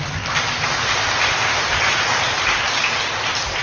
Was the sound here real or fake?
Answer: real